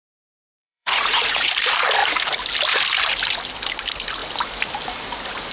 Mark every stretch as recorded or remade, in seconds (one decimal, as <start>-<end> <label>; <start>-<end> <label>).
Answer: 0.0-1.5 remade; 1.5-5.5 recorded